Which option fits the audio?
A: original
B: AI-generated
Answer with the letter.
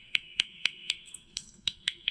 B